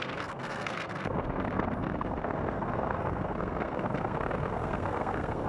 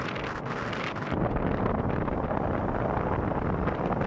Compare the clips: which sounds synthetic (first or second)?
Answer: first